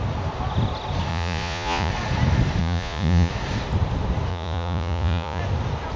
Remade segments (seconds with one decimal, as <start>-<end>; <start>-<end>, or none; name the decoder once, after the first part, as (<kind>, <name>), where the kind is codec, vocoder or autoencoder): 1.1-1.9 (vocoder, Vocos); 2.6-3.3; 4.3-5.4

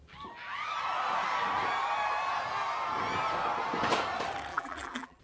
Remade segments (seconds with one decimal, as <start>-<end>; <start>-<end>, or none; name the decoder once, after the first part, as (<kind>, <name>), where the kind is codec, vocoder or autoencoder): 4.5-5.2 (vocoder, BigVGAN v2)

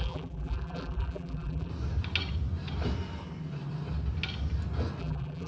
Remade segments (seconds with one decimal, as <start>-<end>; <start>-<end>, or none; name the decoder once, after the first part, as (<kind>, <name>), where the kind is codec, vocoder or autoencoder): 0.0-1.7 (vocoder, BigVGAN v2); 5.0-5.5

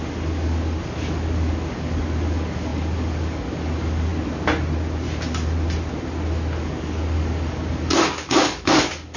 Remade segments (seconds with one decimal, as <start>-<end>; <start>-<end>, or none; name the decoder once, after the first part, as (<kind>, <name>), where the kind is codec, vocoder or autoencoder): 0.0-4.1 (codec, DAC); 6.6-9.2

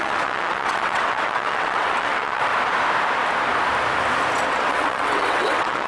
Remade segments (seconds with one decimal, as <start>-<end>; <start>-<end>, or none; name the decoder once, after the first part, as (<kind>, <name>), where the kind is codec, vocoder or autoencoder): 0.0-2.5 (vocoder, WaveNeXt); 4.7-5.9

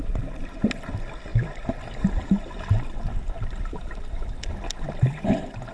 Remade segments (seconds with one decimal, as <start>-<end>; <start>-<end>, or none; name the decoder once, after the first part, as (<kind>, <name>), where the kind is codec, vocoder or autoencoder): 1.3-1.9 (vocoder, BigVGAN v2); 3.1-5.3

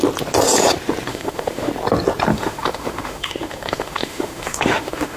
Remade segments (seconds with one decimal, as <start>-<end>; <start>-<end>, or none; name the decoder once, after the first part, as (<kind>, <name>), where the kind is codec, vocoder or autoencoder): 1.1-1.7 (autoencoder, DAC-VAE); 2.3-5.2

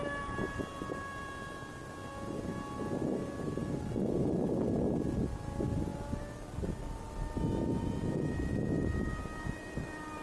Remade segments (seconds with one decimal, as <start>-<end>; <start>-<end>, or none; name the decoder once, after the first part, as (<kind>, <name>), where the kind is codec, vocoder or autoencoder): 0.0-1.8 (vocoder, BigVGAN v2); 5.2-5.9; 7.8-10.2